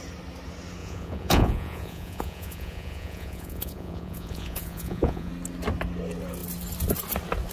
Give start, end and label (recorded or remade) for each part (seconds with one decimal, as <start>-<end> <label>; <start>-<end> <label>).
0.0-0.8 recorded; 0.8-5.3 remade; 5.3-7.5 recorded